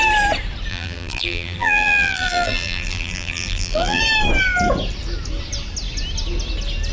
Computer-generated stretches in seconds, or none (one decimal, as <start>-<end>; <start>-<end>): 0.7-4.0